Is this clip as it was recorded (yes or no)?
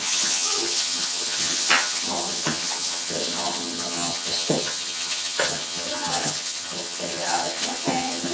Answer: no